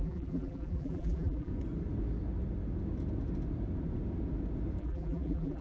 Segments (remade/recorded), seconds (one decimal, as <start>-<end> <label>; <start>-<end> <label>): 0.0-1.5 remade; 1.5-4.8 recorded; 4.8-5.6 remade